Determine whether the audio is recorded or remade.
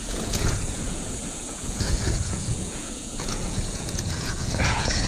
remade